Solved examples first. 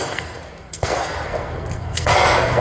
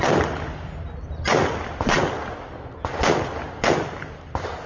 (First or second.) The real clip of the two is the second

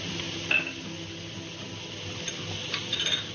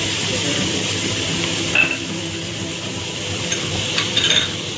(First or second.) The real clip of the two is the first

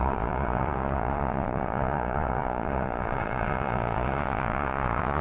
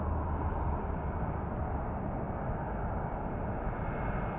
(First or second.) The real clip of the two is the second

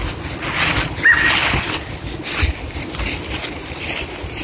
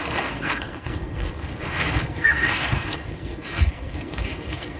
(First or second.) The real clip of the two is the first